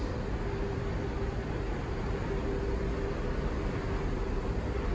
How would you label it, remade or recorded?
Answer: recorded